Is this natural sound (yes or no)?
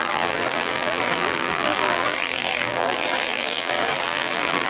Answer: no